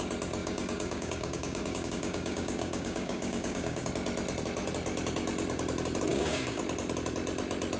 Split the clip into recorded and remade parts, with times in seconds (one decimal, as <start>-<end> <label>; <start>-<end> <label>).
0.0-0.4 recorded; 0.4-3.9 remade; 3.9-6.1 recorded; 6.1-6.6 remade; 6.6-7.8 recorded

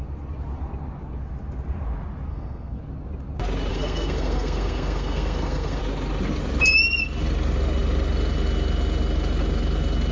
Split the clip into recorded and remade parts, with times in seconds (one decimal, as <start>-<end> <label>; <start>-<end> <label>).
0.0-2.3 recorded; 2.3-2.8 remade; 2.8-3.7 recorded; 3.7-5.8 remade; 5.8-10.1 recorded

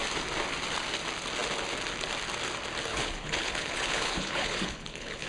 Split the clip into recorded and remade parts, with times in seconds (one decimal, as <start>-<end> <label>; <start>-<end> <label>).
0.0-2.9 recorded; 2.9-5.3 remade